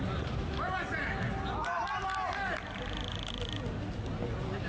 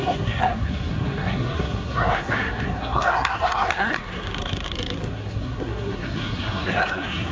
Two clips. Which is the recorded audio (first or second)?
first